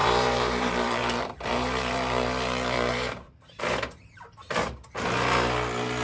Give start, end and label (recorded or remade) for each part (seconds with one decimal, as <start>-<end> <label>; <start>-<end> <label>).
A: 0.0-3.6 remade; 3.6-6.0 recorded